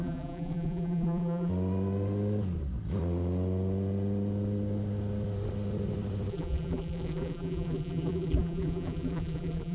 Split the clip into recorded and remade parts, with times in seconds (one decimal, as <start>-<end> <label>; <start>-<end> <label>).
0.0-1.5 remade; 1.5-6.3 recorded; 6.3-9.7 remade